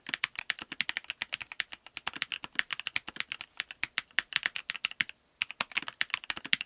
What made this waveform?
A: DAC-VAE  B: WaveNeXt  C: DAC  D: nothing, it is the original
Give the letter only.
D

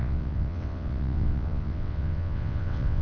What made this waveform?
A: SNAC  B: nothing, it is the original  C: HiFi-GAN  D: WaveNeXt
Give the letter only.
D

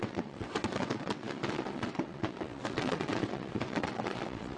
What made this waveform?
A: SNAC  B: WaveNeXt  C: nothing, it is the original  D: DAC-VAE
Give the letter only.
B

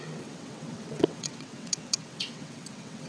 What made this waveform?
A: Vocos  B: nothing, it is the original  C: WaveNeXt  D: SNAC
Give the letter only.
C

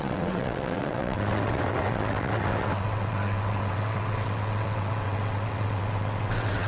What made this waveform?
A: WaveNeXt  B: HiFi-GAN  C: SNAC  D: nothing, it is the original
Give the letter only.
A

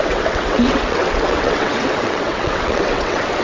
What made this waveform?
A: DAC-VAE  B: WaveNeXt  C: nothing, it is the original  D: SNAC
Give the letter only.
B